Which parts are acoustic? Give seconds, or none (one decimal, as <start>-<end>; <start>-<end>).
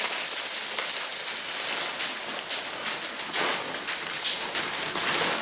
0.0-5.4